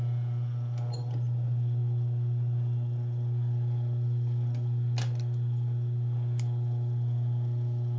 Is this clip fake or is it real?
real